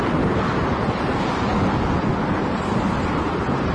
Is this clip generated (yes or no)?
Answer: no